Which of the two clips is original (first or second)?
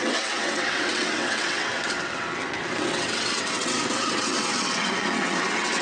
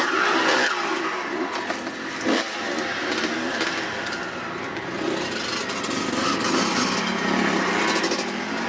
second